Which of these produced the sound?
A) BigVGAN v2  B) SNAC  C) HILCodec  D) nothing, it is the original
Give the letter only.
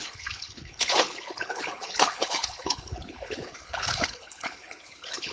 C